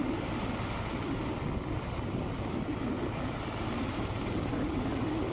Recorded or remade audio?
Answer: remade